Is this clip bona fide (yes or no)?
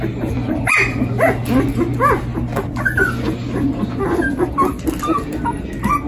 yes